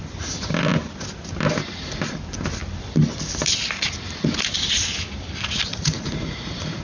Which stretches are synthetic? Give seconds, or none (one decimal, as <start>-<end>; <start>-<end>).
5.7-6.8